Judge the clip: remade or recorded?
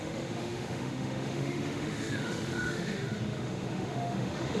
remade